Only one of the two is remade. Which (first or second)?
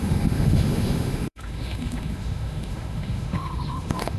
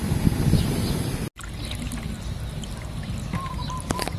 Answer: first